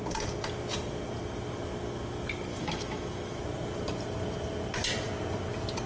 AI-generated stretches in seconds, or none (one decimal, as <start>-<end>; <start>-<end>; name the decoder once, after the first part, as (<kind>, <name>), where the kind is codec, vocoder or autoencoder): 2.5-3.4 (autoencoder, DAC-VAE)